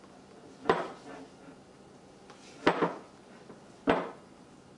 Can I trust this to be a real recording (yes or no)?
yes